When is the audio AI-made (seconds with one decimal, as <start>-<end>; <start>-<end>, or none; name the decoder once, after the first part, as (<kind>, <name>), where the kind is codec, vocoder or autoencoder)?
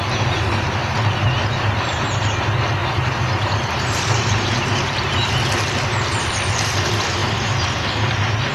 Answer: 2.8-5.3 (vocoder, BigVGAN v2)